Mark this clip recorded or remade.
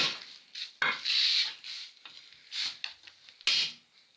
recorded